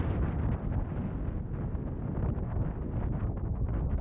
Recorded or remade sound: recorded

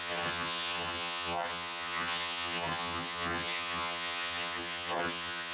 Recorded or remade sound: remade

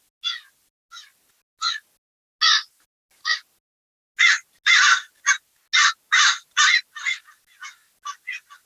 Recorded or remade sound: recorded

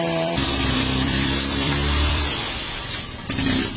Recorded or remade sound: remade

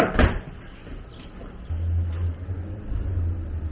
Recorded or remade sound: recorded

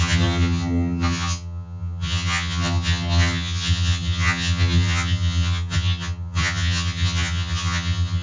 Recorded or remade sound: remade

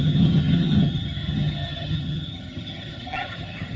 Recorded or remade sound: remade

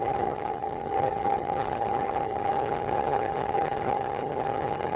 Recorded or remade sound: remade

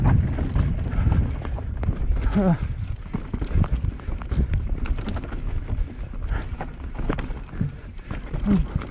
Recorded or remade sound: recorded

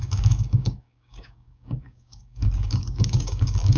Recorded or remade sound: remade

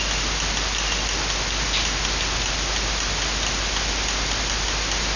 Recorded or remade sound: recorded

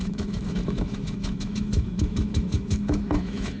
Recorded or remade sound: remade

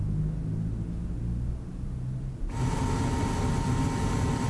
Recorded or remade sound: recorded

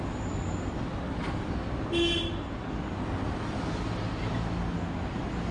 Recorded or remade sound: recorded